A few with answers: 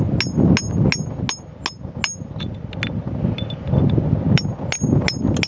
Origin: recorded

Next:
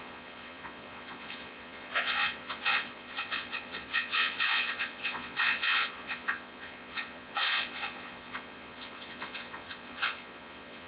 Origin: remade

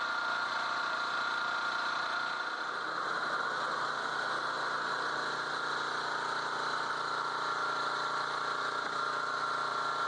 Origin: recorded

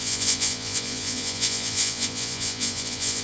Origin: remade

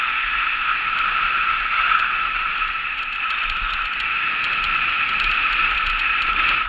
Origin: recorded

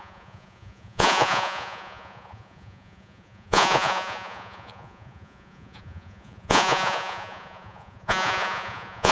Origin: remade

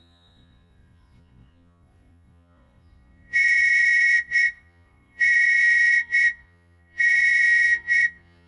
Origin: remade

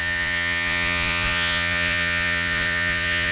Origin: remade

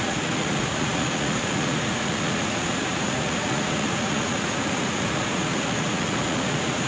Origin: remade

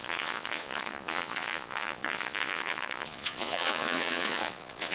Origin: remade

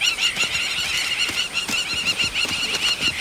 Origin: recorded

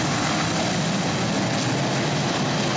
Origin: recorded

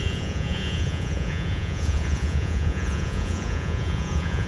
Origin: remade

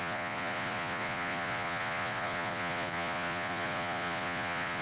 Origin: remade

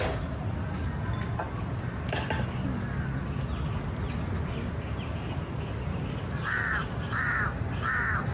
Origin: recorded